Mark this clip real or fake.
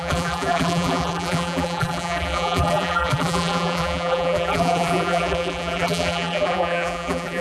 fake